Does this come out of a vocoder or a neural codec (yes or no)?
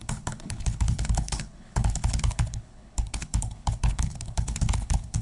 yes